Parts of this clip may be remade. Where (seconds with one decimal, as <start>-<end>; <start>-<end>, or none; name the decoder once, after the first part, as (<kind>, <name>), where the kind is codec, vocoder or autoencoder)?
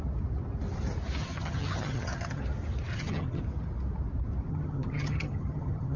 1.2-2.4 (vocoder, HiFi-GAN); 2.9-3.4; 4.5-6.0